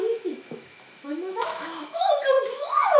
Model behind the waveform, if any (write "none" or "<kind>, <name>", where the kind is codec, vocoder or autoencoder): autoencoder, DAC-VAE